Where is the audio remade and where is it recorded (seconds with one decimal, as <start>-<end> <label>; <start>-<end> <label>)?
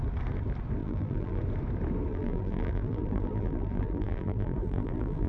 0.0-0.8 recorded; 0.8-1.4 remade; 1.4-2.1 recorded; 2.1-5.3 remade